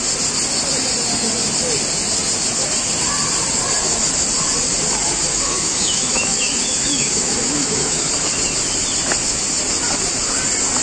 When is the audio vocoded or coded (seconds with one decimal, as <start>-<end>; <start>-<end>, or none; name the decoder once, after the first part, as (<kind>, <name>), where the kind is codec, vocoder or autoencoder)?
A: 5.3-8.1 (autoencoder, DAC-VAE)